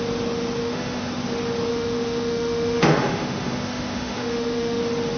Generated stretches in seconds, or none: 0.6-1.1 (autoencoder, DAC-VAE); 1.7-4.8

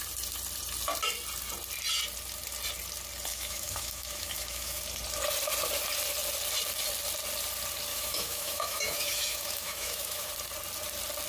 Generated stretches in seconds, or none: 3.3-4.8 (autoencoder, DAC-VAE); 7.9-10.3

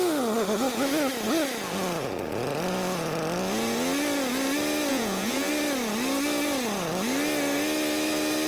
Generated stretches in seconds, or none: 4.9-5.5 (vocoder, Vocos)

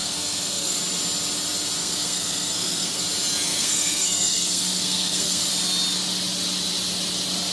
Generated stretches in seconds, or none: 0.0-0.8 (codec, SNAC); 1.8-3.0; 3.5-5.5

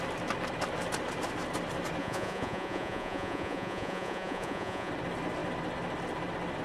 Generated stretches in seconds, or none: 2.0-4.9 (vocoder, Vocos)

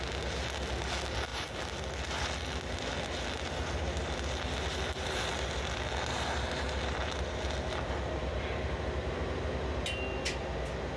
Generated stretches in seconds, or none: none

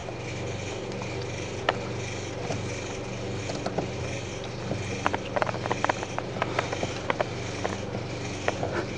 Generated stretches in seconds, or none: none

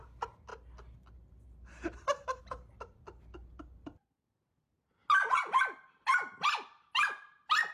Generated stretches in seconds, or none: none